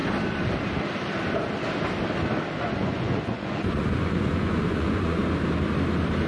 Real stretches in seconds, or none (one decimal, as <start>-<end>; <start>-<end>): 0.0-2.6; 5.2-6.3